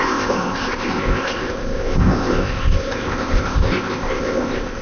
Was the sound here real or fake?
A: fake